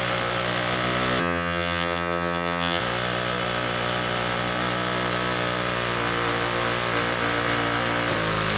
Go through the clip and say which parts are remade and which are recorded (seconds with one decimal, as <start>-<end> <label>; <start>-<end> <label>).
0.0-1.2 recorded; 1.2-2.8 remade; 2.8-8.6 recorded